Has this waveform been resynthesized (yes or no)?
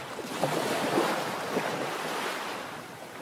yes